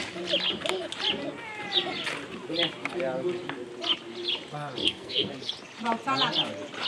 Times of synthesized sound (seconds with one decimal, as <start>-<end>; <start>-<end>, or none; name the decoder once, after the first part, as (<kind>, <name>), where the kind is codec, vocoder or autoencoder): 4.8-5.5 (codec, SNAC)